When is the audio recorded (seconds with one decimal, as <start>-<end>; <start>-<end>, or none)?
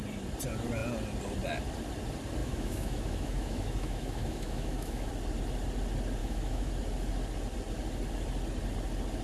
0.0-2.4; 5.1-6.2; 6.7-9.2